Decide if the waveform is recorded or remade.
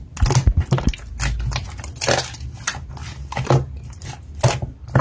recorded